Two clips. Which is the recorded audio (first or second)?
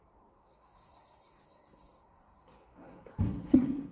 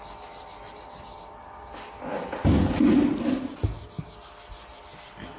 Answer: second